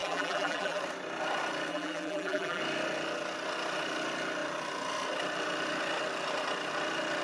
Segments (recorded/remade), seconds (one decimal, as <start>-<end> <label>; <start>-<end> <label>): 0.0-0.8 remade; 0.8-1.7 recorded; 1.7-2.6 remade; 2.6-7.2 recorded